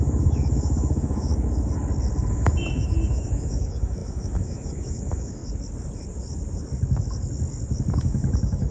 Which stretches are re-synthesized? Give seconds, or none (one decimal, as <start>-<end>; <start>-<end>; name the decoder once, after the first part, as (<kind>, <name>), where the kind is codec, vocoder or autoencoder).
0.0-1.3 (autoencoder, DAC-VAE); 2.3-5.4; 8.0-8.7